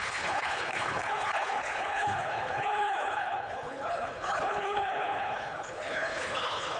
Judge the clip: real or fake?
fake